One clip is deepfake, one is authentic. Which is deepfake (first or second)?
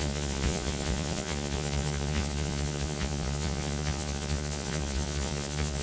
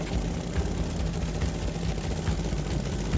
first